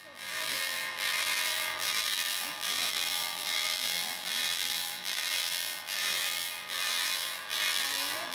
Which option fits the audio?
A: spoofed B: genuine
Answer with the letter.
A